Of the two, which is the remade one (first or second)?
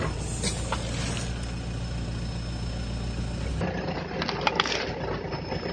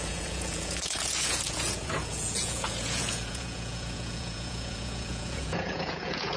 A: second